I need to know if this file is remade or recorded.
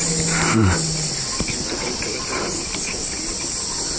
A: recorded